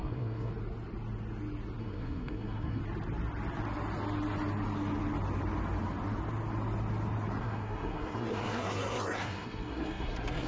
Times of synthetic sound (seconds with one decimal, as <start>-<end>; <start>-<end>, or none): 0.0-0.5; 1.8-2.8; 7.4-10.5